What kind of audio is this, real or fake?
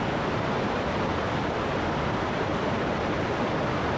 real